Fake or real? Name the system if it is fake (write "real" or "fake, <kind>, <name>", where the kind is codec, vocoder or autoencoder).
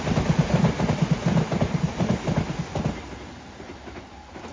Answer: real